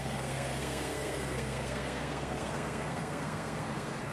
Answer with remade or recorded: remade